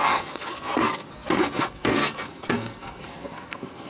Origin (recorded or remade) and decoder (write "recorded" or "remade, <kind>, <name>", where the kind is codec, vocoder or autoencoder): remade, codec, SNAC